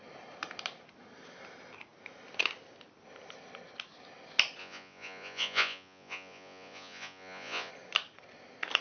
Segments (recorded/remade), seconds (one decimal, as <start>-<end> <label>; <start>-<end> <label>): 0.0-4.6 recorded; 4.6-7.7 remade; 7.7-8.8 recorded